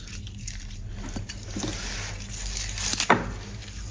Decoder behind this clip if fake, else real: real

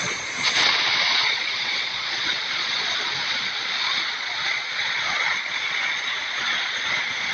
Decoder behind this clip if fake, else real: fake, vocoder, Vocos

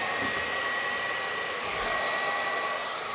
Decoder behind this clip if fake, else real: real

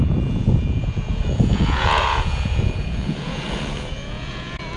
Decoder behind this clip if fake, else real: fake, vocoder, Vocos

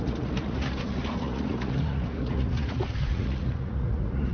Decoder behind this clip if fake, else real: fake, vocoder, Vocos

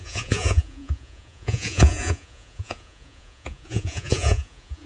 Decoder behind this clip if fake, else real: fake, vocoder, Vocos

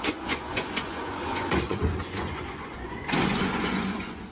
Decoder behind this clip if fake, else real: fake, vocoder, Vocos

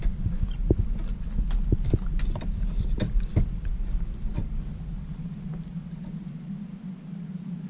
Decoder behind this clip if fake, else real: real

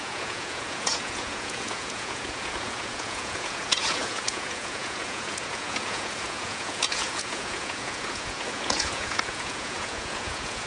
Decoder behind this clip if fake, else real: fake, vocoder, Vocos